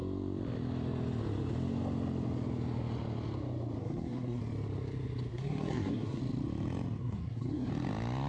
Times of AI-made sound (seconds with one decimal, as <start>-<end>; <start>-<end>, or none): 3.8-4.4; 5.3-6.2; 7.0-7.7